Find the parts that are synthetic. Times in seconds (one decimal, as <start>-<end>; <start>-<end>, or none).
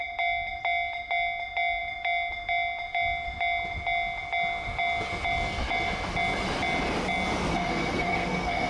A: 7.5-8.7